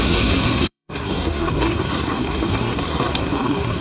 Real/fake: fake